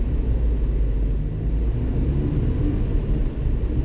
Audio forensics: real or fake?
real